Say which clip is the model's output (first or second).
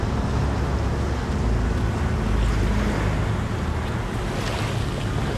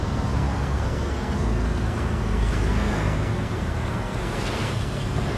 second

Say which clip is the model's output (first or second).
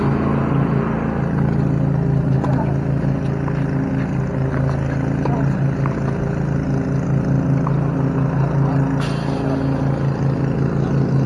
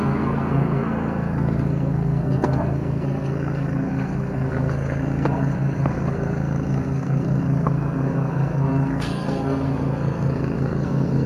second